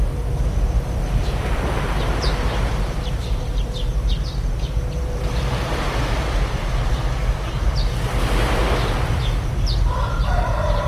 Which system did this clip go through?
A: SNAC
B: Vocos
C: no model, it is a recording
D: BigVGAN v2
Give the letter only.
D